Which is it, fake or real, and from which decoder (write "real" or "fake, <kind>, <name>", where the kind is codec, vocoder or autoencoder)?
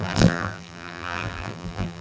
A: fake, vocoder, BigVGAN v2